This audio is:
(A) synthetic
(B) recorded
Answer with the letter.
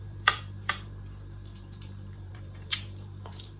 A